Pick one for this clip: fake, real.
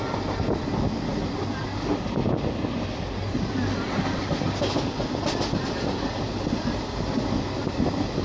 real